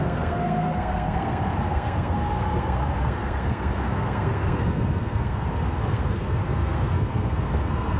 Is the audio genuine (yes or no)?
no